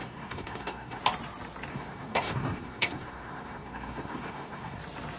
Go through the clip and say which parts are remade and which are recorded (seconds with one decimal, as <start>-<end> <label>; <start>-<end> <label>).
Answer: 0.0-1.0 remade; 1.0-1.7 recorded; 1.7-4.8 remade; 4.8-5.2 recorded